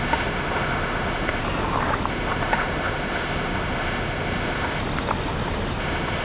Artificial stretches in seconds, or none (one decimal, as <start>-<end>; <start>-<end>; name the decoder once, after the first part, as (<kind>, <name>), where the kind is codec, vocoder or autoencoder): 0.0-1.4 (autoencoder, DAC-VAE); 2.1-4.8; 5.8-6.2

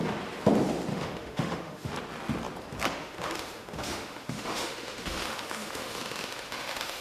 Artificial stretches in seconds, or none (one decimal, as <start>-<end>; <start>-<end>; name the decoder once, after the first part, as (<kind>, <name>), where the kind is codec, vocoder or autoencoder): 0.9-1.9 (autoencoder, DAC-VAE); 3.0-7.0

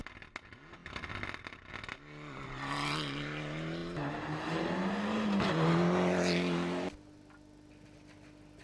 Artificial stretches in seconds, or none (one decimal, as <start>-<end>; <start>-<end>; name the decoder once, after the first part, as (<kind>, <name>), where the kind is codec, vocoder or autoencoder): none

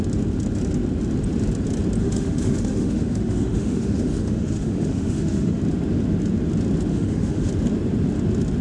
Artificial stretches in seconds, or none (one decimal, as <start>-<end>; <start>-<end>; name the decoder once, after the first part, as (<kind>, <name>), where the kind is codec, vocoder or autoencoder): 2.0-5.6 (autoencoder, DAC-VAE); 6.9-7.5

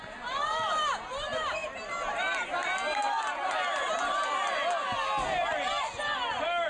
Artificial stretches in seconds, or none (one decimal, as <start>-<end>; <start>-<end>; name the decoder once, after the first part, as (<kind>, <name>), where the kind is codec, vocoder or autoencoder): none

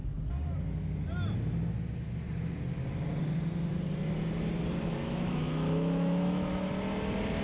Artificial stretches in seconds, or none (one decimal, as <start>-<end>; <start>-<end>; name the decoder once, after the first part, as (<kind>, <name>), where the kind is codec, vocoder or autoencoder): 4.9-6.7 (autoencoder, DAC-VAE)